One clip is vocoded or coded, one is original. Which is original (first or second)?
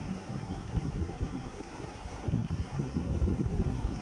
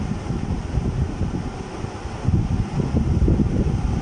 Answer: second